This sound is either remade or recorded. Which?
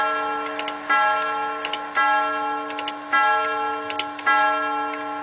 recorded